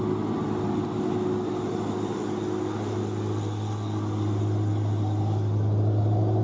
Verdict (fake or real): real